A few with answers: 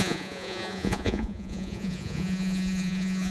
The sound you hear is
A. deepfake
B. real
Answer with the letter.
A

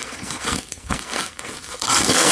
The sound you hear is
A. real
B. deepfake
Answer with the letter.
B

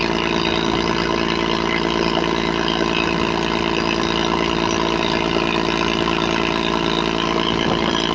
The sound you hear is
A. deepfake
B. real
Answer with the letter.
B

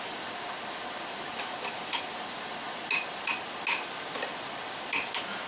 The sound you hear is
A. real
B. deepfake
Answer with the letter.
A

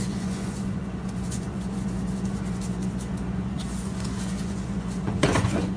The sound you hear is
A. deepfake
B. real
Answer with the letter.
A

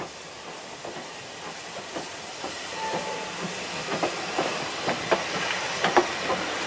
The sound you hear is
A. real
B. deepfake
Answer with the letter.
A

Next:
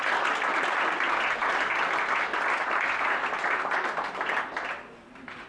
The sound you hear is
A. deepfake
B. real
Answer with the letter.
B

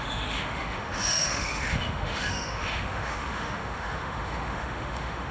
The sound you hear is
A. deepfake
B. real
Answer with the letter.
A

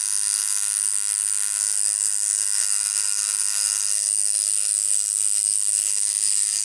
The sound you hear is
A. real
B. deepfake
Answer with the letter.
B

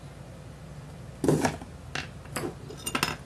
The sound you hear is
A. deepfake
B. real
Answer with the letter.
B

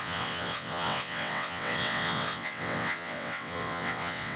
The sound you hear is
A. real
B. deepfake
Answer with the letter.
B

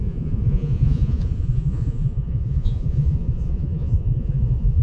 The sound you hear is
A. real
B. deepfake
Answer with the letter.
B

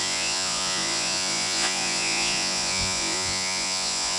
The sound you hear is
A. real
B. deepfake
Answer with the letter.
B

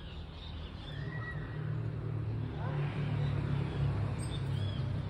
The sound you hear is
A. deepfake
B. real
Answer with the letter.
B